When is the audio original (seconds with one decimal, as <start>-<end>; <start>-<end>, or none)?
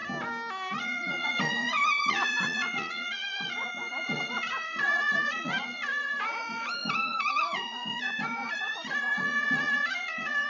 0.0-0.7